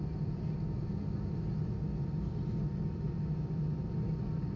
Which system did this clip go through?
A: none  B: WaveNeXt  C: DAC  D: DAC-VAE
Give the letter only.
A